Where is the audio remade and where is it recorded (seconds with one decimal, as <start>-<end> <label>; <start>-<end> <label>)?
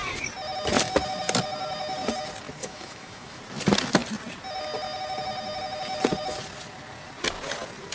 0.0-2.6 recorded; 2.6-3.4 remade; 3.4-7.9 recorded